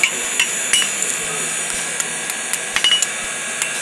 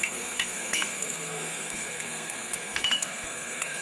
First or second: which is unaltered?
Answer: first